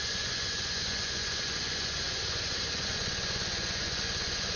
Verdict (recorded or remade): remade